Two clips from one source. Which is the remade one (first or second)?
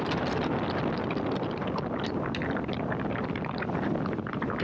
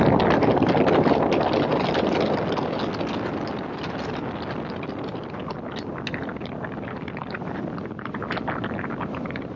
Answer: first